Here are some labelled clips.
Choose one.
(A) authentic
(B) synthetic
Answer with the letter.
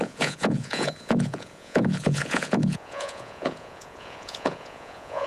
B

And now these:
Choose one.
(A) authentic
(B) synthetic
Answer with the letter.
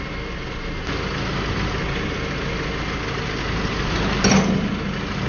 A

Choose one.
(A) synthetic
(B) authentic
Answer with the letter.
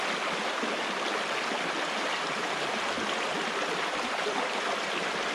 B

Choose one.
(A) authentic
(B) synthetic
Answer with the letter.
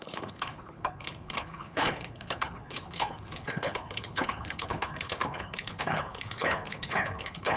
B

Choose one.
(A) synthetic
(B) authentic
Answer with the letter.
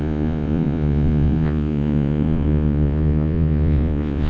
A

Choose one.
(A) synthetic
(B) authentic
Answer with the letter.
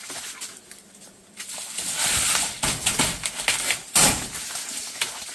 B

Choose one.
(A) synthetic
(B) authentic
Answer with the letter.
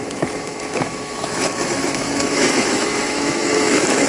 A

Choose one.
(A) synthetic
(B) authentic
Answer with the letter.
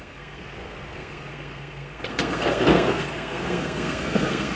A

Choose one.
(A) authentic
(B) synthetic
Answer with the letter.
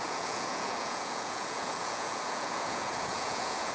B